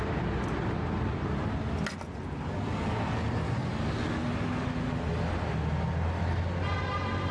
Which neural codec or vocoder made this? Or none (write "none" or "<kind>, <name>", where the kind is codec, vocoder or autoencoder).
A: none